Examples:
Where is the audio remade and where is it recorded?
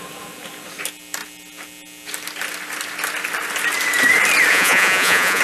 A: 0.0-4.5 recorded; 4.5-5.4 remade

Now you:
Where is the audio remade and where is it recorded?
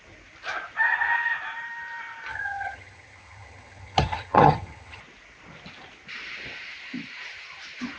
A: 0.0-2.3 recorded; 2.3-5.0 remade; 5.0-8.0 recorded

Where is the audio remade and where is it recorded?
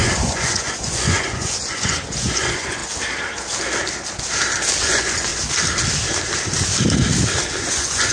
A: 0.0-2.8 remade; 2.8-4.8 recorded; 4.8-5.3 remade; 5.3-7.6 recorded; 7.6-8.1 remade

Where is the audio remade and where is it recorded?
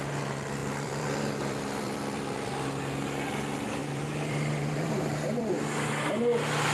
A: 0.0-0.6 recorded; 0.6-2.8 remade; 2.8-3.8 recorded; 3.8-6.1 remade; 6.1-6.7 recorded